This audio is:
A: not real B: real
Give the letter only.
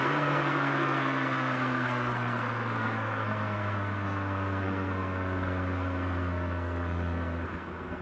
A